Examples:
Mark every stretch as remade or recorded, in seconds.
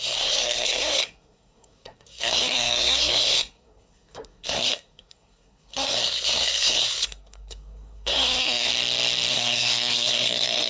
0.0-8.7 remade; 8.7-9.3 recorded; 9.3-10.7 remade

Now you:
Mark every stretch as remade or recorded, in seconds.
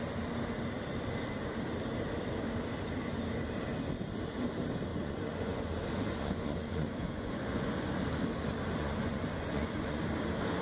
0.0-4.9 recorded; 4.9-8.0 remade; 8.0-8.8 recorded; 8.8-10.0 remade; 10.0-10.6 recorded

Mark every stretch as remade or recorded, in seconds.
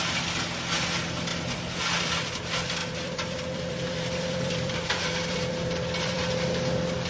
0.0-1.3 recorded; 1.3-2.0 remade; 2.0-2.8 recorded; 2.8-6.2 remade; 6.2-7.1 recorded